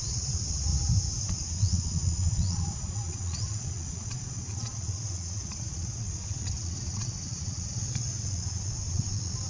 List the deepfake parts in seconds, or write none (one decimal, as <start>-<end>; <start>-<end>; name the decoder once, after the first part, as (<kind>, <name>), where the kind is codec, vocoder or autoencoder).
0.0-0.7 (vocoder, Vocos); 1.2-9.5